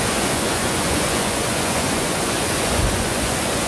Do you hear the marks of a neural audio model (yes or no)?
yes